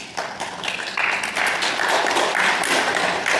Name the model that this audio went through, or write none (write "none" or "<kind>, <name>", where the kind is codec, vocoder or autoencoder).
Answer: none